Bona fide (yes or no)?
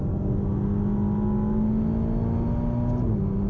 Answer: yes